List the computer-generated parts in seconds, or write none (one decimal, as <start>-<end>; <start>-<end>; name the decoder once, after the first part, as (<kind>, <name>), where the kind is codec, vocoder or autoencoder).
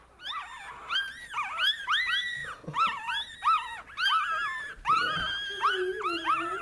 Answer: none